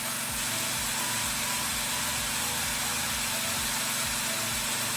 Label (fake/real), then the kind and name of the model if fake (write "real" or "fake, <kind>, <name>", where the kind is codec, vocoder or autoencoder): real